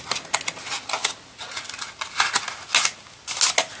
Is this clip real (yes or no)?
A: yes